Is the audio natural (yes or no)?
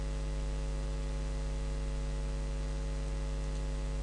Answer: yes